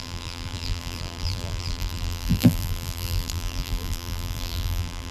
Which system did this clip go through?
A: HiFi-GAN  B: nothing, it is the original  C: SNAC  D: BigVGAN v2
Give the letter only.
D